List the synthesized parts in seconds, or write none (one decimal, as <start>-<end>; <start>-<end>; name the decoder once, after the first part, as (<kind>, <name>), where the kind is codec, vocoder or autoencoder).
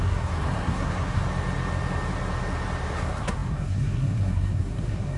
0.0-1.2 (codec, SNAC); 2.9-5.2